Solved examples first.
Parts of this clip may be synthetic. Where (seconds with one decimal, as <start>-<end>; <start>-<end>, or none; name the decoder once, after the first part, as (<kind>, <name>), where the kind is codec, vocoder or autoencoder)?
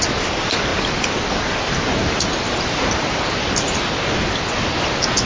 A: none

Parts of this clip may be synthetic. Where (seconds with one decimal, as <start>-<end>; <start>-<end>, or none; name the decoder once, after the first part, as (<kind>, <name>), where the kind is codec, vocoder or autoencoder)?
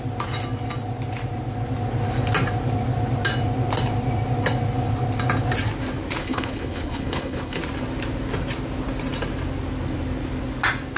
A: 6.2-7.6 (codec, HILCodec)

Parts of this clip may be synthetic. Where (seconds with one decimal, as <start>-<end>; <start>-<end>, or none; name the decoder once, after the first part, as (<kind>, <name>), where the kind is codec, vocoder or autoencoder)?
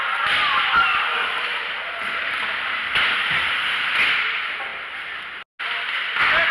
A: none